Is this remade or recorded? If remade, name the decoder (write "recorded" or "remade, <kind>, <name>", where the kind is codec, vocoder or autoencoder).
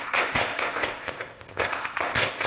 remade, codec, ZipCodec